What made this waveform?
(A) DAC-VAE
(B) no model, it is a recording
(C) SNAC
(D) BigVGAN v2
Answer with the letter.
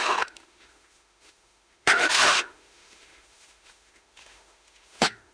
A